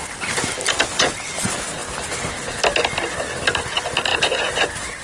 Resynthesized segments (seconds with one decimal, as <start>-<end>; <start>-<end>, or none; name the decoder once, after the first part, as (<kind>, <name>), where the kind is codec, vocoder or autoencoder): none